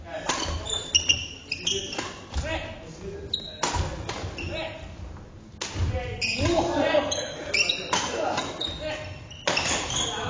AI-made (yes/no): no